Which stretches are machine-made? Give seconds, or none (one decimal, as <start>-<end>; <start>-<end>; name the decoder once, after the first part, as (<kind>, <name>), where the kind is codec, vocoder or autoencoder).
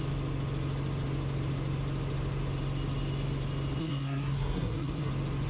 3.8-5.1 (codec, SNAC)